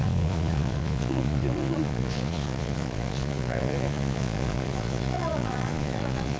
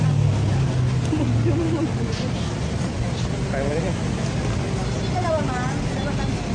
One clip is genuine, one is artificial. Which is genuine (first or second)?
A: second